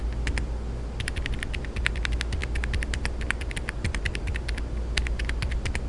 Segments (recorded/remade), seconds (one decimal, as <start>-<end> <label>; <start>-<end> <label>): 0.0-5.9 recorded